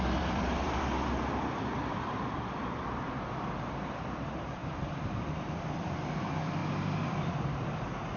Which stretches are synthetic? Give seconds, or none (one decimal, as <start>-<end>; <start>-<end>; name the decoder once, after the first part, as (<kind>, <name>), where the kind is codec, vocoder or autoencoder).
0.0-6.6 (vocoder, BigVGAN v2)